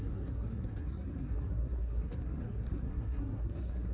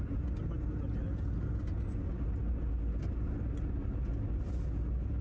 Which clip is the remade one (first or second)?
first